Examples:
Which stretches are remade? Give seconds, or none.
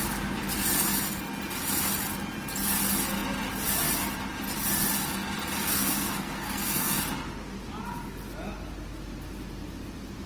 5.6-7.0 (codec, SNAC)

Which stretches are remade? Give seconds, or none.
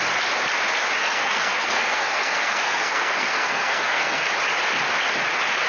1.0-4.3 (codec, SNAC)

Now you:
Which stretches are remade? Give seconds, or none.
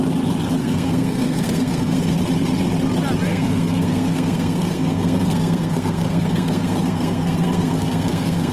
0.6-2.2 (codec, SNAC); 3.3-8.5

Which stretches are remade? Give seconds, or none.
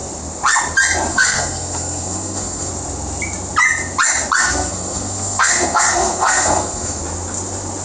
1.1-2.7 (codec, SNAC); 4.4-7.0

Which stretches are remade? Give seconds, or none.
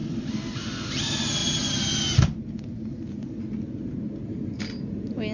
none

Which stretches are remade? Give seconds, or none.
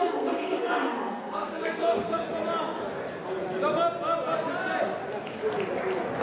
0.0-2.2 (codec, SNAC)